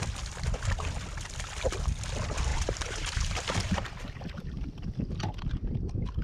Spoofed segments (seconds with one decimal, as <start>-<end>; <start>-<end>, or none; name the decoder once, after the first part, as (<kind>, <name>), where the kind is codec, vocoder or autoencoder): 2.5-4.2 (vocoder, BigVGAN v2)